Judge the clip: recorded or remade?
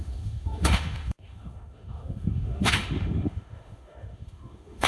remade